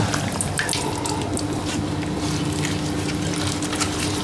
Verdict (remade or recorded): recorded